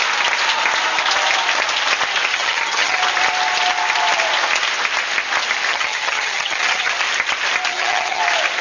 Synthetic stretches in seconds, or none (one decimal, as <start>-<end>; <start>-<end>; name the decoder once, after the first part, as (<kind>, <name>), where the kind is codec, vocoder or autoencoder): 2.3-3.0 (vocoder, HiFi-GAN); 5.7-6.9; 7.7-8.2